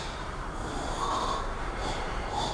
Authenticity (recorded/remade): remade